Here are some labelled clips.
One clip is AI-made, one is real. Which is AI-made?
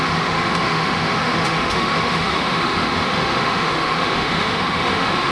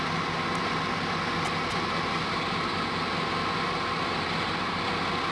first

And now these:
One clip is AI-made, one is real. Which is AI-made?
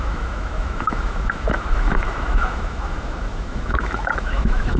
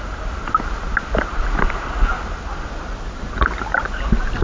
first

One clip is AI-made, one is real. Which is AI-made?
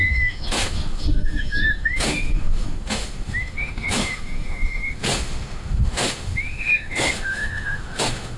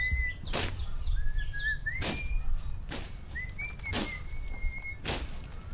first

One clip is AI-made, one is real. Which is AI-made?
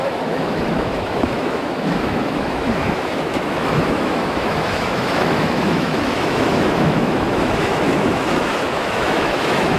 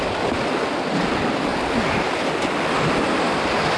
first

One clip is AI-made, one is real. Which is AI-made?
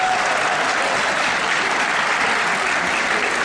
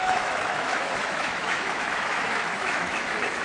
second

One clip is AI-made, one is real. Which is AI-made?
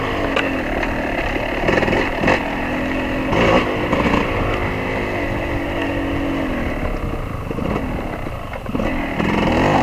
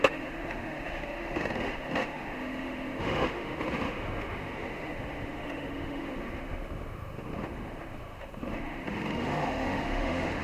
second